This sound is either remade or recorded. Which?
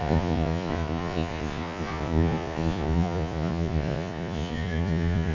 remade